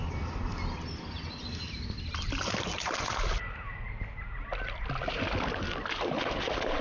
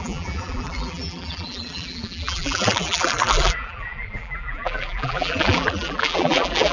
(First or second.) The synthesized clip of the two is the second